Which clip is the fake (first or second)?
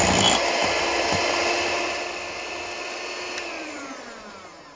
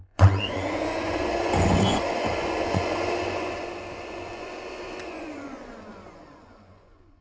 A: second